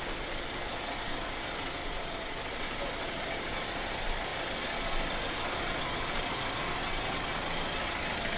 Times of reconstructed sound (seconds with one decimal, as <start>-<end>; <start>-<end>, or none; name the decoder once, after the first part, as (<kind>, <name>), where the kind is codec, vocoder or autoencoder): 1.8-2.6 (vocoder, Vocos)